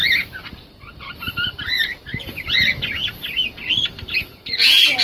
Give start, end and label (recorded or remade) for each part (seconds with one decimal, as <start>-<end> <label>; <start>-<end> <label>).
0.0-2.8 remade; 2.8-5.0 recorded

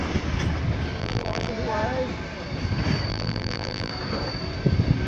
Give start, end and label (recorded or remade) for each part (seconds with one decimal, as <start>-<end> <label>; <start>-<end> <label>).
0.0-1.0 recorded; 1.0-1.5 remade; 1.5-3.1 recorded; 3.1-3.9 remade; 3.9-5.1 recorded

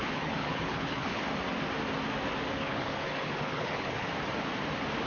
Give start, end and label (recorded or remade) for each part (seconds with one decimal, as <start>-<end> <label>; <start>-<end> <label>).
0.0-1.2 remade; 1.2-2.6 recorded; 2.6-4.1 remade; 4.1-5.1 recorded

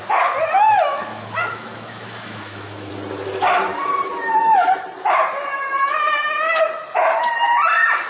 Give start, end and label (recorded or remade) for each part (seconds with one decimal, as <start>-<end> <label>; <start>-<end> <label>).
0.0-0.4 recorded; 0.4-2.9 remade; 2.9-5.8 recorded; 5.8-6.6 remade; 6.6-8.1 recorded

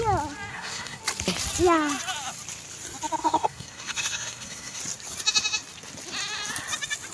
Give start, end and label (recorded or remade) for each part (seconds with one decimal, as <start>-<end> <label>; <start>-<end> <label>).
0.0-0.5 recorded; 0.5-1.0 remade; 1.0-3.2 recorded; 3.2-4.8 remade; 4.8-7.1 recorded

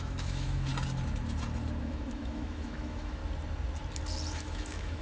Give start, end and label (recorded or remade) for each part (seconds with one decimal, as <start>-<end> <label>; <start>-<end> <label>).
0.0-0.7 remade; 0.7-1.8 recorded; 1.8-3.2 remade; 3.2-4.3 recorded; 4.3-5.0 remade

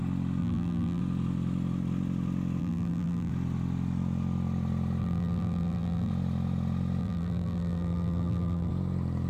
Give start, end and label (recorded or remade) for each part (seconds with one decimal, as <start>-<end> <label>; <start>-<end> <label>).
0.0-0.4 recorded; 0.4-1.0 remade; 1.0-2.6 recorded; 2.6-3.3 remade; 3.3-5.0 recorded; 5.0-6.1 remade; 6.1-7.0 recorded; 7.0-8.7 remade; 8.7-9.3 recorded

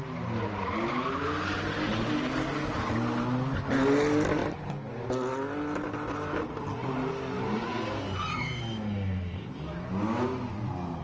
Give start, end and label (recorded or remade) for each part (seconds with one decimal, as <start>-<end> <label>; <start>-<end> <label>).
0.0-11.0 recorded